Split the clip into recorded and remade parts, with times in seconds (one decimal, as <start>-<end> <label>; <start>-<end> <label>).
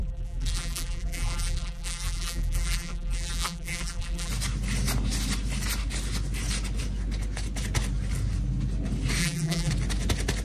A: 0.0-4.3 remade; 4.3-9.2 recorded; 9.2-9.7 remade; 9.7-10.4 recorded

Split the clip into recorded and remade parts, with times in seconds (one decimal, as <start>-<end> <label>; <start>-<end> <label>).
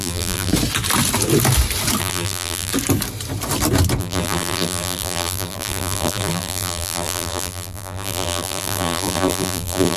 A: 0.0-0.5 remade; 0.5-2.0 recorded; 2.0-2.7 remade; 2.7-4.0 recorded; 4.0-10.0 remade